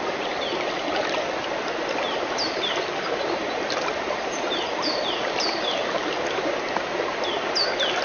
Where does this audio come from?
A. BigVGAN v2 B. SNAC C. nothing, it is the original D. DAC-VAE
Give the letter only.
C